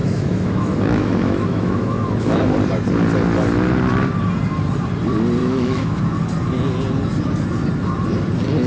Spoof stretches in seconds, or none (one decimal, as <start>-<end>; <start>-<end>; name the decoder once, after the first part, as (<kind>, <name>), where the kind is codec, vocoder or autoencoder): 0.0-2.4 (autoencoder, DAC-VAE); 5.4-6.0